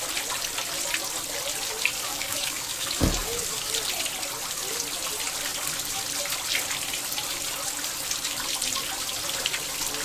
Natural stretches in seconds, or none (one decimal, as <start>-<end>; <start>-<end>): 0.0-2.1; 3.7-10.0